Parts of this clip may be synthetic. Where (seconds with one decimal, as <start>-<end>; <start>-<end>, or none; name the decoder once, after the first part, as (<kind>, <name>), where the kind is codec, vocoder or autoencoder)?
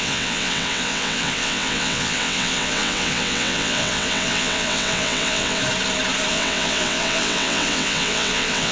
0.0-5.6 (vocoder, WaveNeXt); 6.3-8.7